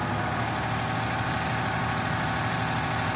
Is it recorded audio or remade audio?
recorded